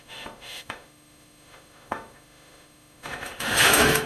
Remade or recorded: remade